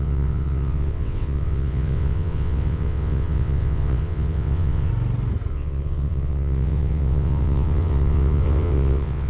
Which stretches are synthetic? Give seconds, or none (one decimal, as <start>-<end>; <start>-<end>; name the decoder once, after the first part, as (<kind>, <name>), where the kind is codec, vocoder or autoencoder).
0.0-4.9 (vocoder, WaveNeXt); 5.5-9.3